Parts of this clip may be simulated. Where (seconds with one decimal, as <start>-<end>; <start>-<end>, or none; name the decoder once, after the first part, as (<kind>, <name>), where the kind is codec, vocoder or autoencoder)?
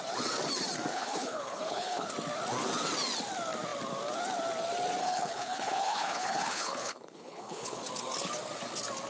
0.9-2.1 (codec, HILCodec); 5.0-7.8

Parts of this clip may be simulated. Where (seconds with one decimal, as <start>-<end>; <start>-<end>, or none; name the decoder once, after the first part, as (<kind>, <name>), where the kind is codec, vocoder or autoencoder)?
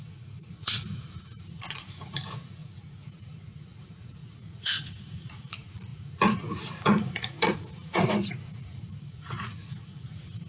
0.0-10.5 (vocoder, Vocos)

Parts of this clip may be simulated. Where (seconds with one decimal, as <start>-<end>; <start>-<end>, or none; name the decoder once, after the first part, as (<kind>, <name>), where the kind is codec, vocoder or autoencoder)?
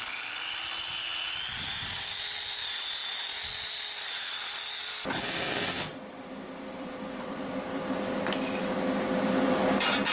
3.0-7.8 (vocoder, BigVGAN v2)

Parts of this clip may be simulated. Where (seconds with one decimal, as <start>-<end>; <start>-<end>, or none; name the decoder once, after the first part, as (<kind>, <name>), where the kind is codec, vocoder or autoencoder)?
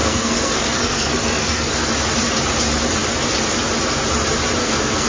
0.0-1.9 (codec, SNAC); 4.6-5.1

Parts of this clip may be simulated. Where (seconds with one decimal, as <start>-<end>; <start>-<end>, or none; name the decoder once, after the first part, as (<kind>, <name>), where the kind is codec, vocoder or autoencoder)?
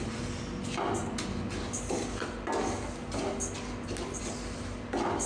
none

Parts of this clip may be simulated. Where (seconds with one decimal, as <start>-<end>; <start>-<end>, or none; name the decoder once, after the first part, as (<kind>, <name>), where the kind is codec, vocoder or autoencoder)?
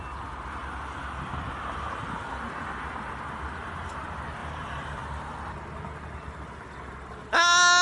0.6-3.9 (vocoder, BigVGAN v2); 4.4-5.2